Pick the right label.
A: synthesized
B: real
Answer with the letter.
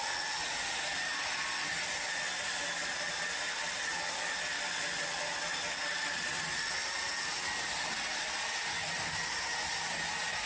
B